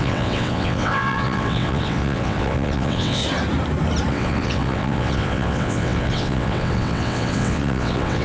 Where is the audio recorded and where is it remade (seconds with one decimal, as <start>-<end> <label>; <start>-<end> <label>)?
0.0-3.2 remade; 3.2-4.1 recorded; 4.1-8.2 remade